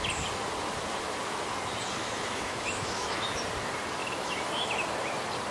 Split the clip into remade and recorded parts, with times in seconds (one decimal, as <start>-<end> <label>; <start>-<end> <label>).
0.0-2.0 recorded; 2.0-3.4 remade; 3.4-4.0 recorded; 4.0-4.7 remade; 4.7-5.5 recorded